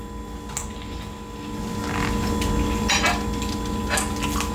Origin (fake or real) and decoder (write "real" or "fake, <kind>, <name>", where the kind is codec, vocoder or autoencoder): real